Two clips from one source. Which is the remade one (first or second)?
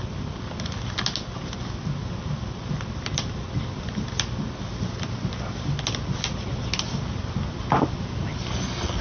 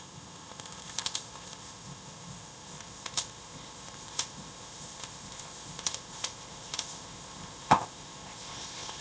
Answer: second